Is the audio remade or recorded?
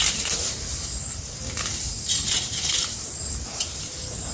remade